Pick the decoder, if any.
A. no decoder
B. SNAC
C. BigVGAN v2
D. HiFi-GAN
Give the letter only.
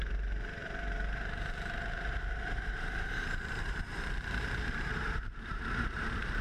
C